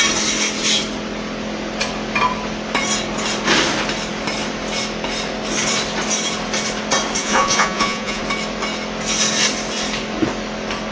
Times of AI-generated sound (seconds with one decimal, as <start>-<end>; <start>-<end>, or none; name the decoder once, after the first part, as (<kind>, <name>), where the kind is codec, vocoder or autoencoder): 7.2-8.2 (vocoder, Vocos)